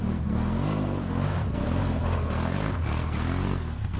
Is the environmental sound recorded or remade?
remade